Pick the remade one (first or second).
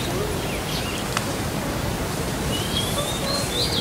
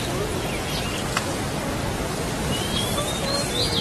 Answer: first